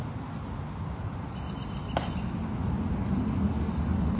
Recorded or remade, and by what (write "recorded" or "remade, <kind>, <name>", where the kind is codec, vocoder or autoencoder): recorded